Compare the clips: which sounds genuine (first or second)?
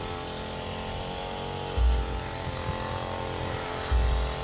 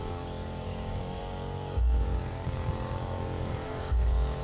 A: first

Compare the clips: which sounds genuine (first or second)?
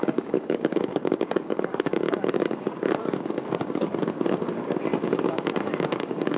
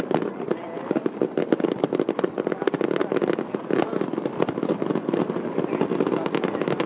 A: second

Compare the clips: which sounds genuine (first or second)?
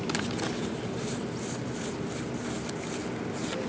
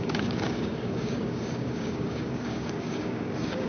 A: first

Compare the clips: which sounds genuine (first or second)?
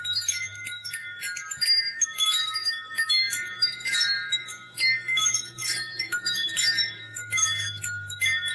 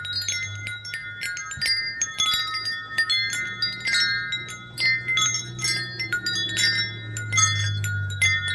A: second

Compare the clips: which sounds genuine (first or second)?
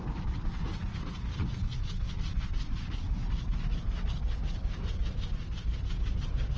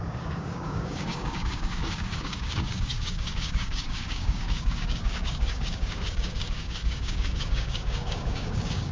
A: first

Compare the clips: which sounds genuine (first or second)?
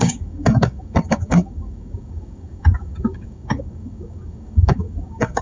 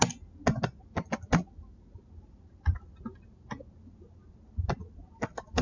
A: second